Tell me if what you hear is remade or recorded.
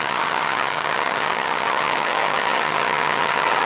remade